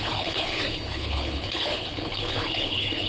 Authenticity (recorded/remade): remade